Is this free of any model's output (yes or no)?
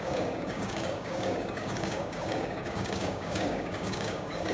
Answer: no